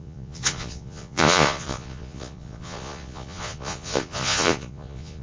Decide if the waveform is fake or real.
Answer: fake